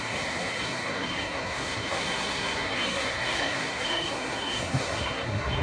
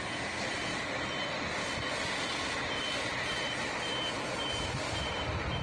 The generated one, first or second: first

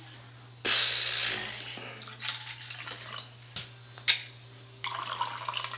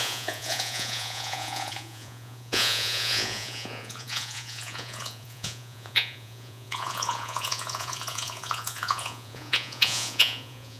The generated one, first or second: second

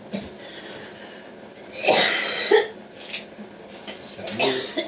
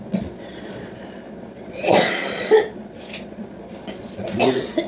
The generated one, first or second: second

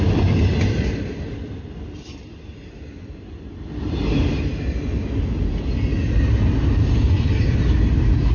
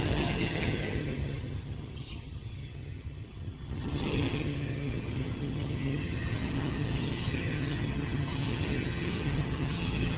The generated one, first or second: second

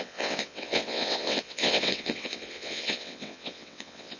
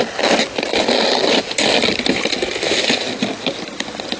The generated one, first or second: first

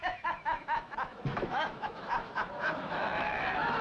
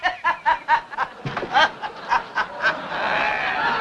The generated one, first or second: first